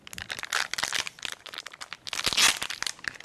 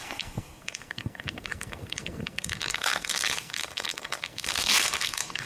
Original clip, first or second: first